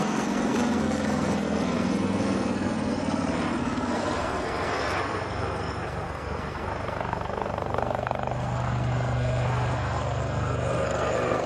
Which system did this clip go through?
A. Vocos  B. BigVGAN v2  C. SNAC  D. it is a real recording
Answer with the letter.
C